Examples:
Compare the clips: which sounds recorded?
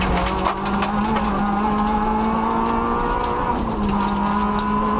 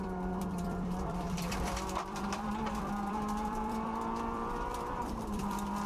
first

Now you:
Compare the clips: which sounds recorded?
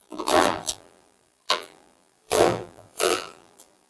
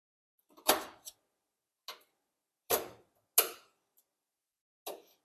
second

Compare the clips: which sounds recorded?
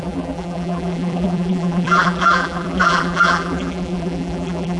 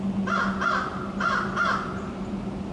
second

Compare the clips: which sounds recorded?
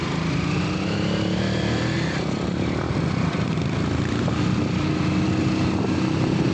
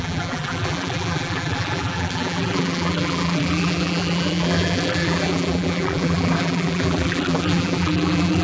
first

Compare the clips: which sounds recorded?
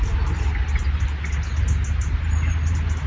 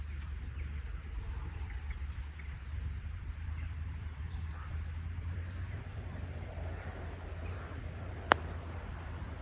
first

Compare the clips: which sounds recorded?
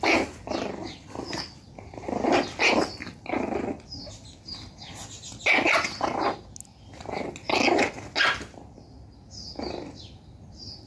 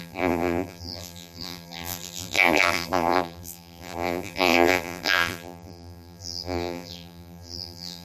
first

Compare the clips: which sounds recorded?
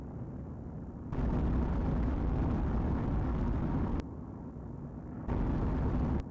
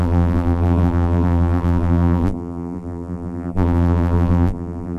first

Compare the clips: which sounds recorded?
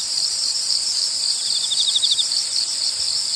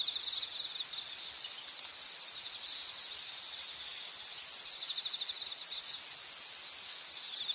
second